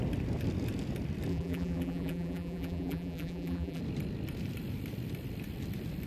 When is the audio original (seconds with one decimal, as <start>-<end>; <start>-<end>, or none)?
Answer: 0.0-1.3; 3.8-6.1